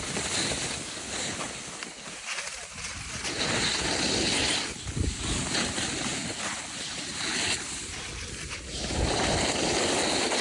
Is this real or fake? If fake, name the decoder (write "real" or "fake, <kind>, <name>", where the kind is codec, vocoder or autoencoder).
real